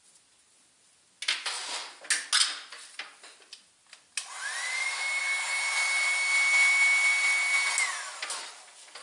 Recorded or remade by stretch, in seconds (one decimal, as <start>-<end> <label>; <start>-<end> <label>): 0.0-9.0 recorded